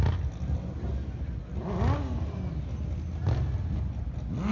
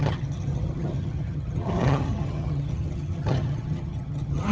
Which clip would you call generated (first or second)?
second